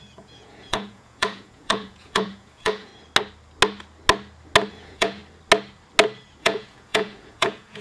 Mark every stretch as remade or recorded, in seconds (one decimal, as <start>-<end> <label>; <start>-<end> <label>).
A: 0.0-2.9 remade; 2.9-4.7 recorded; 4.7-5.2 remade; 5.2-6.4 recorded; 6.4-7.8 remade